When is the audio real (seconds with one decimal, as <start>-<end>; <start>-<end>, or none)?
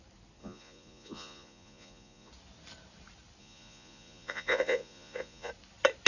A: 0.0-0.4; 2.3-3.4; 5.5-6.1